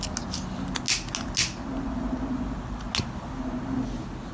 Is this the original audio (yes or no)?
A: yes